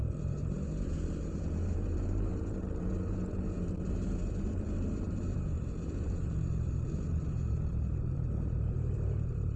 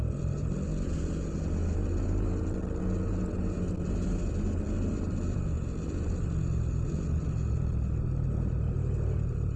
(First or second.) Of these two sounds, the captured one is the second